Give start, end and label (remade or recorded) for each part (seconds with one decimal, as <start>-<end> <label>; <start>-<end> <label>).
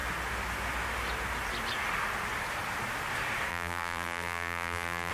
0.0-3.5 recorded; 3.5-5.1 remade